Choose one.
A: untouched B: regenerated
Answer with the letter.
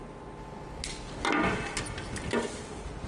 A